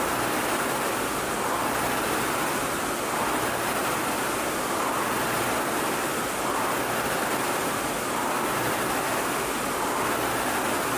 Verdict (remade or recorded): recorded